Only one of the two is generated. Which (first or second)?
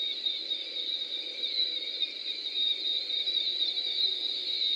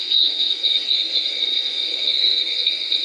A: second